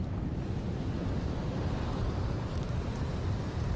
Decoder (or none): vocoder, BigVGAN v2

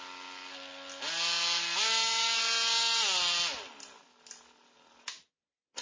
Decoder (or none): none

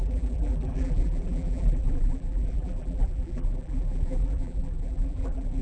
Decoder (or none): vocoder, BigVGAN v2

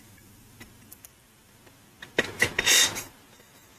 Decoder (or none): none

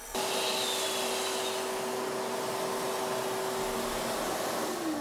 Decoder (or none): none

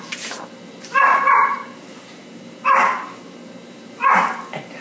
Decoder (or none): vocoder, BigVGAN v2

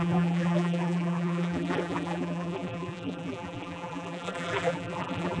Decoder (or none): vocoder, BigVGAN v2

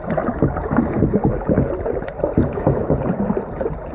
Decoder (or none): vocoder, BigVGAN v2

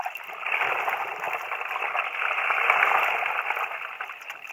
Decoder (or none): none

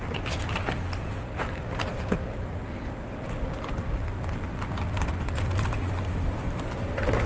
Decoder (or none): none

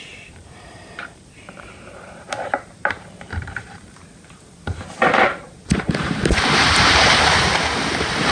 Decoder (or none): vocoder, BigVGAN v2